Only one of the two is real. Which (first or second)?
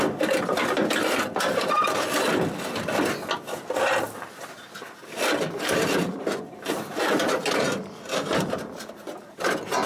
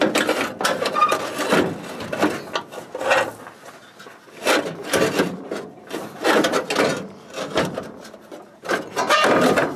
second